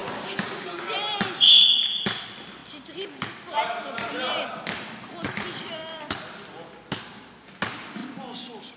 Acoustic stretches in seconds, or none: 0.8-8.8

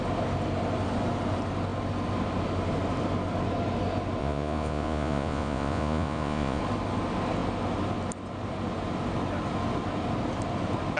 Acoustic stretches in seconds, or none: 0.0-4.2; 6.6-11.0

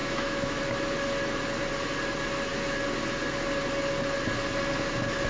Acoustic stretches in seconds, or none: 0.6-5.3

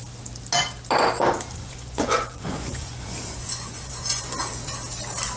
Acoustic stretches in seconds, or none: 0.0-1.6; 4.4-5.4

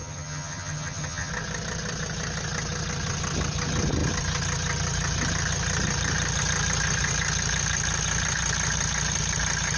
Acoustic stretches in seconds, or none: 1.3-9.8